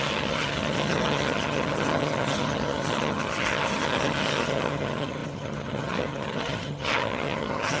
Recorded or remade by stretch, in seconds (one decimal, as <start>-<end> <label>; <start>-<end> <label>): 0.0-7.8 remade